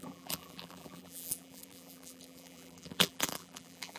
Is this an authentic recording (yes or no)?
no